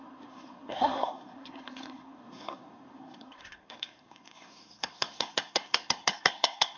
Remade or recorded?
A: remade